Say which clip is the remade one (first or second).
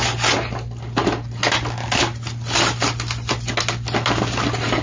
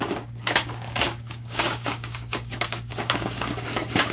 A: second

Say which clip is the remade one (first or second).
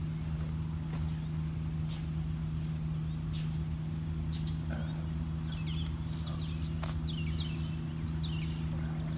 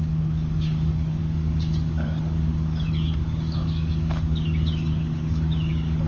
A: second